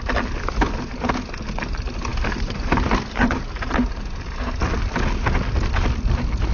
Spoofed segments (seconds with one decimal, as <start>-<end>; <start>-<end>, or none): 2.1-3.4